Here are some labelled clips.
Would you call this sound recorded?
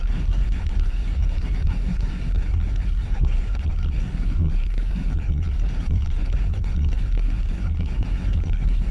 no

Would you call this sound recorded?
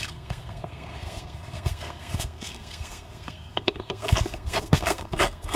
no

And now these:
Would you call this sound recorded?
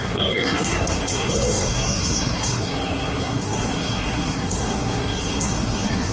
no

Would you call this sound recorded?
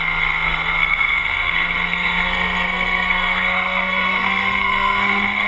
no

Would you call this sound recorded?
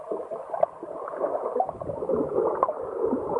yes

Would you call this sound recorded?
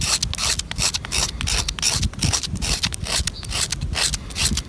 yes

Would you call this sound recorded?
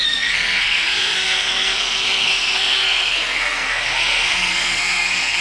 no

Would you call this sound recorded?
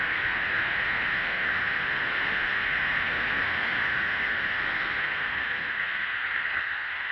no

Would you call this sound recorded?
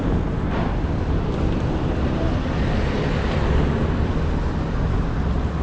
yes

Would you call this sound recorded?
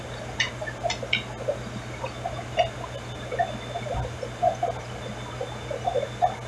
yes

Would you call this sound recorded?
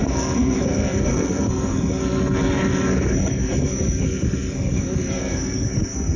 no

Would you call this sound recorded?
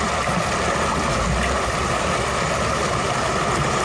yes